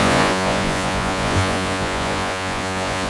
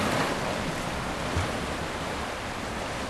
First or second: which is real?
second